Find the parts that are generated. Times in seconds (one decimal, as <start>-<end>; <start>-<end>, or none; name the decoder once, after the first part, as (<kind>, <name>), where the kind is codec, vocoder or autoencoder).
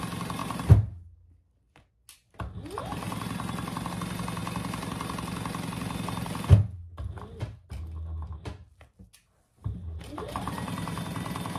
9.6-11.0 (vocoder, BigVGAN v2)